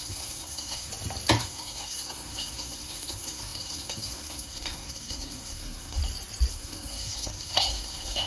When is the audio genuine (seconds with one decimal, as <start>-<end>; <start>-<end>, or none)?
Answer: 0.9-1.4; 6.0-6.5